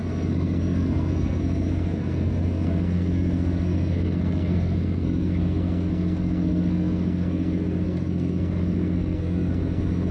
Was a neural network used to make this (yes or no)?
yes